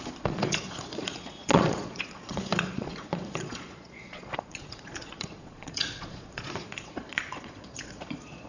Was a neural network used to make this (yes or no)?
yes